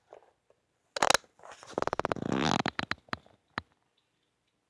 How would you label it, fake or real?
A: real